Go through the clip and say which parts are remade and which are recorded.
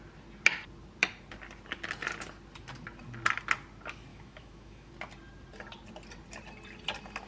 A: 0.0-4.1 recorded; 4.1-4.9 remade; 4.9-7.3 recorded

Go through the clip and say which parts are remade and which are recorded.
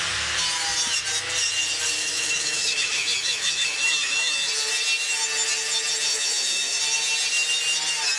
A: 0.0-2.0 recorded; 2.0-4.5 remade; 4.5-6.1 recorded; 6.1-6.8 remade; 6.8-8.2 recorded